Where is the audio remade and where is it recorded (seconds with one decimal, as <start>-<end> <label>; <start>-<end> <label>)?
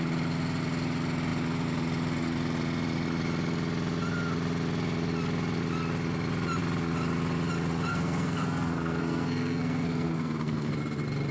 0.0-7.9 recorded; 7.9-10.7 remade; 10.7-11.3 recorded